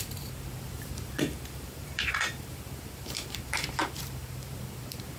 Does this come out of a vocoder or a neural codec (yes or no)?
yes